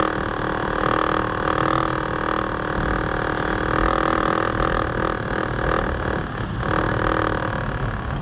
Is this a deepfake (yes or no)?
no